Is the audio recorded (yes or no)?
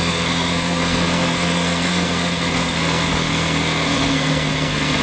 no